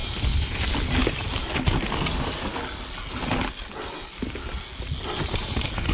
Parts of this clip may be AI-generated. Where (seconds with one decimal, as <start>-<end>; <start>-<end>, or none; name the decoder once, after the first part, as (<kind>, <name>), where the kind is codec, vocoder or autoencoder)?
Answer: none